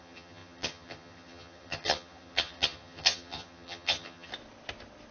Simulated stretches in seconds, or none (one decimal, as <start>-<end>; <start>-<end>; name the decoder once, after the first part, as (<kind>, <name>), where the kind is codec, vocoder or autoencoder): 0.0-4.3 (vocoder, HiFi-GAN)